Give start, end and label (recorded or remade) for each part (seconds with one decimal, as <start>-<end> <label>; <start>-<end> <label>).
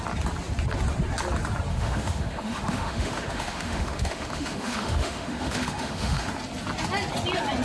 0.0-1.7 recorded; 1.7-6.3 remade; 6.3-7.6 recorded